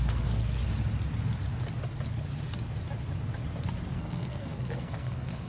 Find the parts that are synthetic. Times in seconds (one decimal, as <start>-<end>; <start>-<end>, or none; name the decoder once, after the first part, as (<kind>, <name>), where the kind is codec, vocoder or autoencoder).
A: 0.0-0.6 (codec, SNAC); 3.9-5.5